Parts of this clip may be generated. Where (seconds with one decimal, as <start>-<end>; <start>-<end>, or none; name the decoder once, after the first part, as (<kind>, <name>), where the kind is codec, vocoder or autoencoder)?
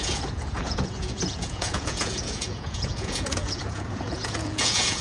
0.0-5.0 (vocoder, Vocos)